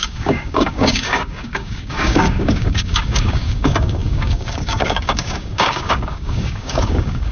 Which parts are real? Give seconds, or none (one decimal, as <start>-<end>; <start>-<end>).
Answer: none